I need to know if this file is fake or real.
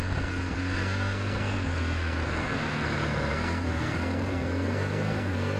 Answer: fake